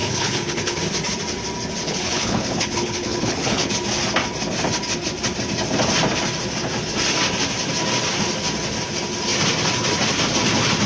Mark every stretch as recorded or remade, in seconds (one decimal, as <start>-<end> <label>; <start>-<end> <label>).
0.0-0.8 remade; 0.8-1.8 recorded; 1.8-3.7 remade; 3.7-10.9 recorded

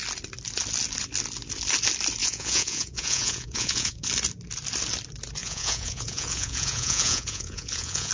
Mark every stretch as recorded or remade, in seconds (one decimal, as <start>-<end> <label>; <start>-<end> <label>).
0.0-2.2 recorded; 2.2-4.1 remade; 4.1-5.4 recorded; 5.4-8.1 remade

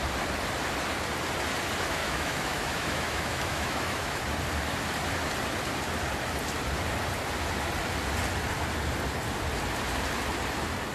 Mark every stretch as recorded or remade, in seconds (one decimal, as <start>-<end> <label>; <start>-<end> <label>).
0.0-2.0 recorded; 2.0-4.2 remade; 4.2-10.9 recorded

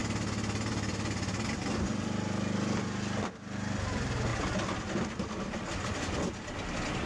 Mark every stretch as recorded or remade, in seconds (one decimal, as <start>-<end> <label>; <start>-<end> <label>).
0.0-7.1 recorded

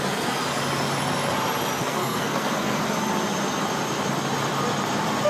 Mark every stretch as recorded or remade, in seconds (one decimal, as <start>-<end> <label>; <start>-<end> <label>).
0.0-0.4 remade; 0.4-1.8 recorded; 1.8-2.8 remade; 2.8-5.3 recorded

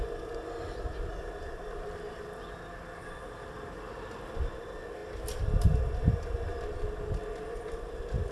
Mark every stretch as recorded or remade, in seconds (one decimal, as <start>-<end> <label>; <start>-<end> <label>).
0.0-8.3 recorded